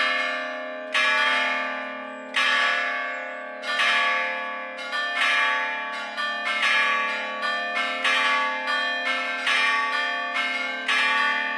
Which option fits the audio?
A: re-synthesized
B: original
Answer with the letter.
B